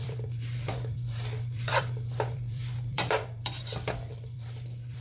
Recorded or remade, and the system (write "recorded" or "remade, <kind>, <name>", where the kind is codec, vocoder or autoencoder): remade, vocoder, BigVGAN v2